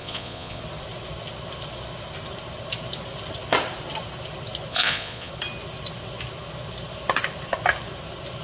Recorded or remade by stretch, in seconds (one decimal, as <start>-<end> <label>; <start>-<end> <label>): 0.0-0.6 remade; 0.6-4.7 recorded; 4.7-5.3 remade; 5.3-8.4 recorded